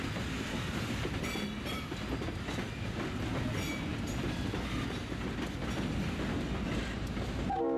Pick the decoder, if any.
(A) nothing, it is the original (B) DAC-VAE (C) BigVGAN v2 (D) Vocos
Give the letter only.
A